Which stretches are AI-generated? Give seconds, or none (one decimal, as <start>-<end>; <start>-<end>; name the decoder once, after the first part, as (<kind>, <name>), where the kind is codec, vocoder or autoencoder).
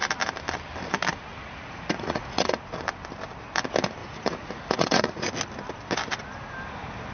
1.3-2.6 (vocoder, Vocos); 4.0-5.3